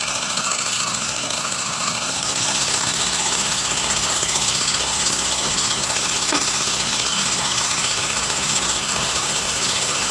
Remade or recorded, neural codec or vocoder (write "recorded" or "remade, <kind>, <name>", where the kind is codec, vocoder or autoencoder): remade, codec, SNAC